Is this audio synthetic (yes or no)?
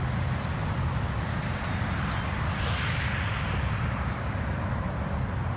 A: no